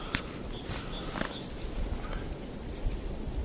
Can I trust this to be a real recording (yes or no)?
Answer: yes